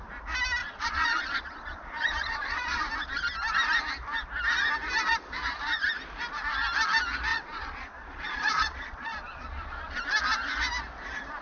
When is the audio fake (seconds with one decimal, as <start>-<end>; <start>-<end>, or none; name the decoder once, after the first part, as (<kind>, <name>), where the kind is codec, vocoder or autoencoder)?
0.6-2.8 (vocoder, Vocos); 7.3-10.0